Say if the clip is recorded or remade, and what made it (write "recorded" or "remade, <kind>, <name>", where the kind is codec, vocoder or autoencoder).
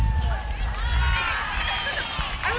recorded